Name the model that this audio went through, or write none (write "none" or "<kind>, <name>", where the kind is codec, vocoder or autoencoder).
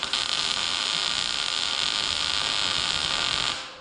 none